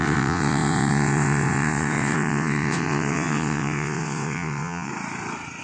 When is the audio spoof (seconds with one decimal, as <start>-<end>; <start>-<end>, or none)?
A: 0.0-4.9

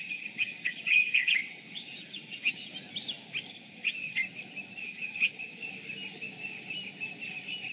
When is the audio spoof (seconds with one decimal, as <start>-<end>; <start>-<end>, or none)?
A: 0.0-2.7; 3.5-4.2; 4.8-5.6

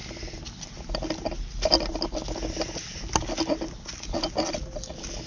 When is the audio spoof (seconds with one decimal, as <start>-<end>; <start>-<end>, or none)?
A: none

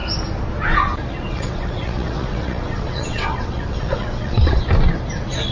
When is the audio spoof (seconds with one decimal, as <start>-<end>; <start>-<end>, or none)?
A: 1.3-4.6